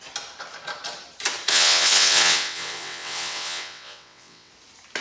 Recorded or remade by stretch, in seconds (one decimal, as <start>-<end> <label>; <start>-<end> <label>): 0.0-1.5 recorded; 1.5-4.5 remade; 4.5-5.0 recorded